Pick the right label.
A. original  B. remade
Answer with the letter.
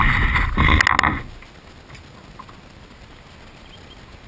A